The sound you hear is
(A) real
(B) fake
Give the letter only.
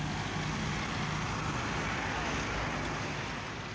A